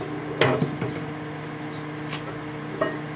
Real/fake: real